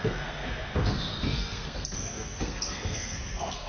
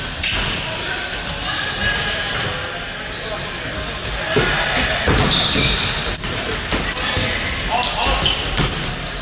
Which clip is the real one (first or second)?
second